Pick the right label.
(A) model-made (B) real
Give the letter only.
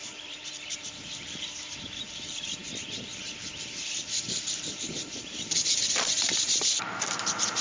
A